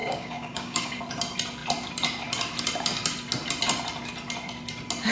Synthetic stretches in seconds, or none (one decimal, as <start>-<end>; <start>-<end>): 0.0-1.0